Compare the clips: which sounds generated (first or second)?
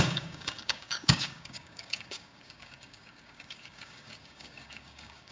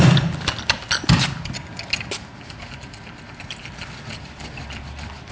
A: first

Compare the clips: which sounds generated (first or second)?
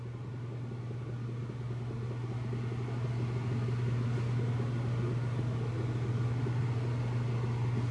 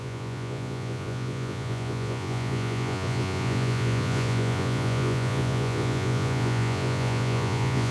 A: second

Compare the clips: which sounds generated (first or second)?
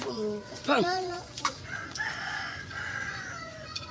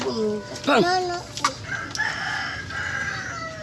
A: first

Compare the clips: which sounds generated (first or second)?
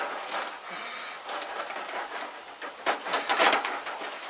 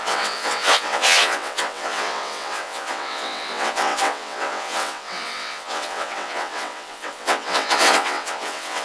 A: second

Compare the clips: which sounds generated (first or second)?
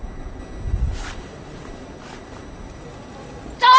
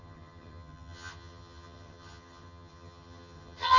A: second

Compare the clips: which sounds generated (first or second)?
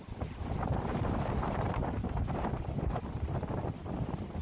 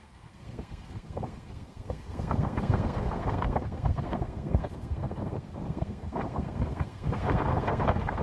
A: second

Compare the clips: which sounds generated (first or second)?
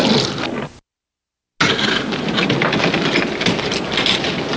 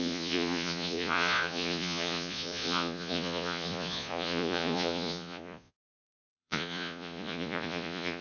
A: second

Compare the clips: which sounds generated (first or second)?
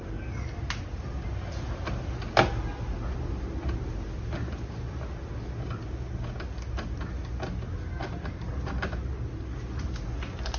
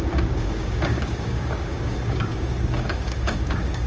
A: second